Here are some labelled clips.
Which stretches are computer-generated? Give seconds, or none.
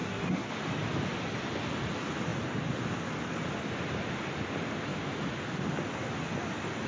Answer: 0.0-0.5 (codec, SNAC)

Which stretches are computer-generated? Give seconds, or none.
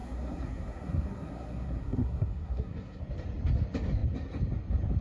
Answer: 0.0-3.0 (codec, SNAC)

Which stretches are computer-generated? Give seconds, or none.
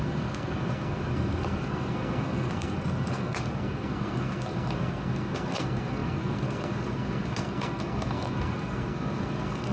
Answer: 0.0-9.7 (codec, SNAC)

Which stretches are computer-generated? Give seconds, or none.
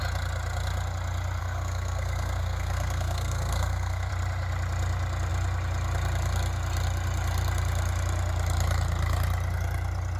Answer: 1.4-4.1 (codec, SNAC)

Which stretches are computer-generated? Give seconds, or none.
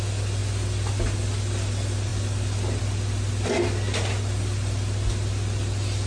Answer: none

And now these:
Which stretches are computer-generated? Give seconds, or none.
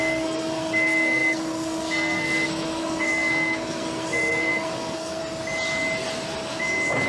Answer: 0.0-5.2 (codec, SNAC)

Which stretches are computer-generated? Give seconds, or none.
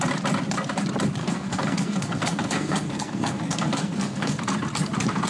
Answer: 1.2-4.4 (codec, SNAC)